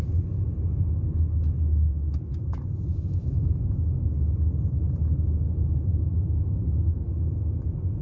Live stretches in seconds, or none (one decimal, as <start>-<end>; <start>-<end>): 0.0-2.9; 3.6-5.9; 7.1-8.0